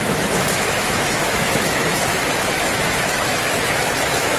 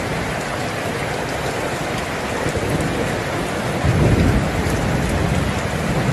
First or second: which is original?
second